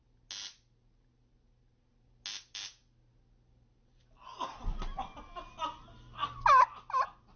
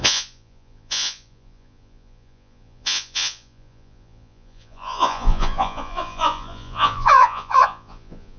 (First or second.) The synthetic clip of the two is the second